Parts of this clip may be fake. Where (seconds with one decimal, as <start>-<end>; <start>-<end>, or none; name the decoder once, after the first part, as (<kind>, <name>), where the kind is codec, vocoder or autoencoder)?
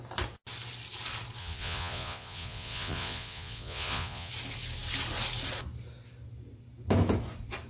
1.4-4.3 (vocoder, Vocos)